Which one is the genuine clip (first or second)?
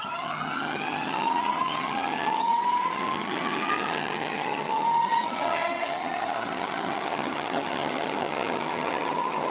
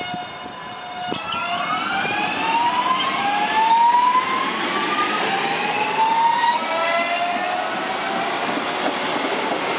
second